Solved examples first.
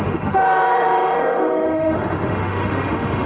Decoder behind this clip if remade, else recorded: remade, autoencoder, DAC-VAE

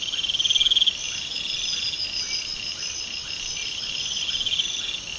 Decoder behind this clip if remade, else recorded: recorded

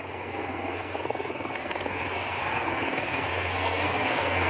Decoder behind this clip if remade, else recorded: remade, codec, SNAC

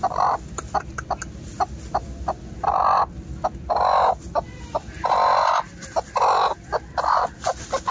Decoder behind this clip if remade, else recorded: recorded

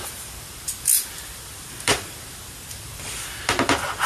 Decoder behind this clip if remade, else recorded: remade, vocoder, BigVGAN v2